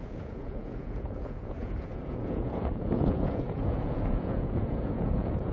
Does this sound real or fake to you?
fake